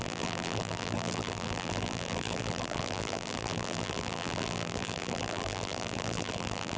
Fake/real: fake